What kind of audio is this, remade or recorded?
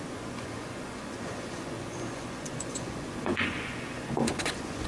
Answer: remade